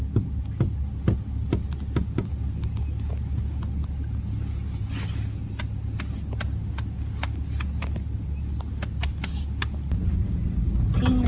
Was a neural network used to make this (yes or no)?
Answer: no